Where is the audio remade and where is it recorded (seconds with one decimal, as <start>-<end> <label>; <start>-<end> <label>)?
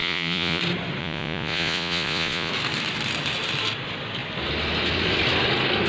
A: 0.0-0.6 remade; 0.6-1.0 recorded; 1.0-2.5 remade; 2.5-5.9 recorded